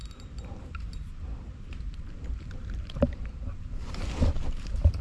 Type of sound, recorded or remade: remade